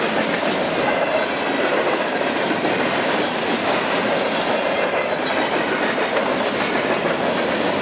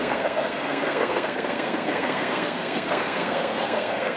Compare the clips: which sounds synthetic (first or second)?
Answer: second